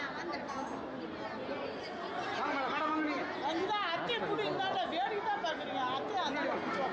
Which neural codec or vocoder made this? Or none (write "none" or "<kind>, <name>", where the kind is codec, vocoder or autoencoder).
none